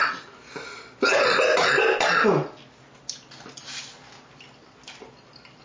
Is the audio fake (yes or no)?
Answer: no